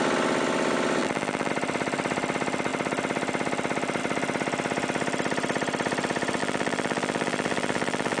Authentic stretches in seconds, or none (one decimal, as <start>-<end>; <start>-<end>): 0.0-1.0; 1.5-6.4